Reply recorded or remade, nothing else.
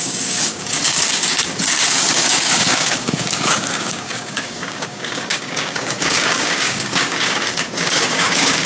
remade